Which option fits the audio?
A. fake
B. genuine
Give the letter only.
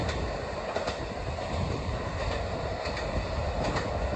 B